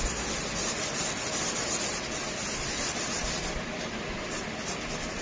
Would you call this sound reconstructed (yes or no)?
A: no